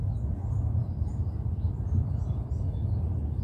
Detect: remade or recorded recorded